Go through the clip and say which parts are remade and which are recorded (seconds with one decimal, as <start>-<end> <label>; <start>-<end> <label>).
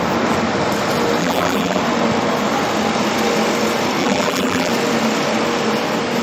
0.0-1.2 recorded; 1.2-1.8 remade; 1.8-4.0 recorded; 4.0-4.7 remade; 4.7-6.2 recorded